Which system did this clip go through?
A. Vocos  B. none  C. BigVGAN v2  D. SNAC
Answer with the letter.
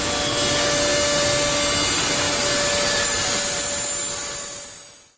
B